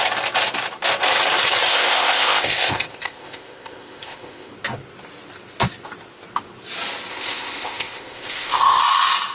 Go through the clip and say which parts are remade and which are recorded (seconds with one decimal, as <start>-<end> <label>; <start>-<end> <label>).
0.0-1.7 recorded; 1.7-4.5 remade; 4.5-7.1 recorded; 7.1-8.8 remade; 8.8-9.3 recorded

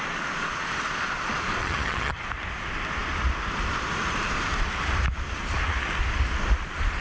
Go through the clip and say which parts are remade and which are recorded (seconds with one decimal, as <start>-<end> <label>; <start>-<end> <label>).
0.0-1.6 recorded; 1.6-2.2 remade; 2.2-7.0 recorded

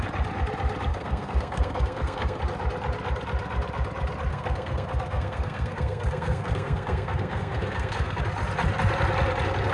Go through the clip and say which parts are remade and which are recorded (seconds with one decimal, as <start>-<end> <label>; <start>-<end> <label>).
0.0-0.9 recorded; 0.9-2.4 remade; 2.4-4.3 recorded; 4.3-8.2 remade; 8.2-9.7 recorded

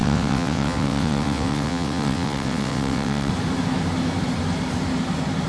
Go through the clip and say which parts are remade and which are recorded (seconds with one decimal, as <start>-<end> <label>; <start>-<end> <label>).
0.0-3.3 remade; 3.3-5.5 recorded

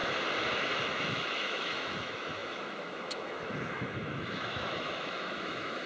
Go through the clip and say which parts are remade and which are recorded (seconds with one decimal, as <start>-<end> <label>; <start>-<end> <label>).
0.0-0.8 recorded; 0.8-5.9 remade

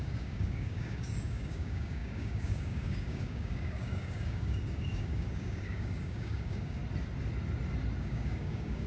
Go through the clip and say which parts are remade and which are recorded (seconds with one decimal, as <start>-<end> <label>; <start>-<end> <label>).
0.0-6.8 remade; 6.8-8.0 recorded; 8.0-8.9 remade